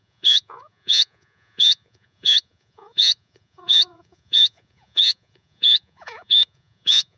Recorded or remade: remade